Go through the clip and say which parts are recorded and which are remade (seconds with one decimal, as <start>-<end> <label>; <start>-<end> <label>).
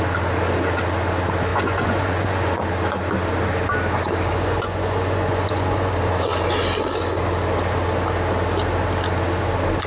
0.0-1.5 recorded; 1.5-2.6 remade; 2.6-4.3 recorded; 4.3-5.9 remade; 5.9-9.9 recorded